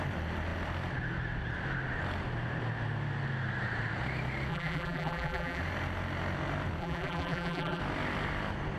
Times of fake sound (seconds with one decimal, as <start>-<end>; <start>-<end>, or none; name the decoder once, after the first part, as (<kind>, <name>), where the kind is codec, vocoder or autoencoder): 4.5-5.6 (vocoder, BigVGAN v2); 6.8-7.8